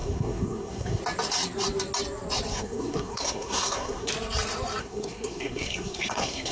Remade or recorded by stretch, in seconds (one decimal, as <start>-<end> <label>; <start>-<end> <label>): 0.0-1.0 remade; 1.0-2.5 recorded; 2.5-4.1 remade; 4.1-4.8 recorded; 4.8-6.5 remade